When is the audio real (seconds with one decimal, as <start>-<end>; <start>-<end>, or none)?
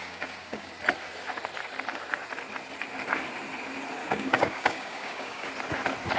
0.7-4.0; 5.5-6.2